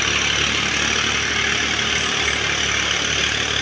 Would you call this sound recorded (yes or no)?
yes